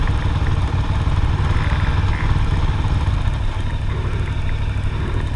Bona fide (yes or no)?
yes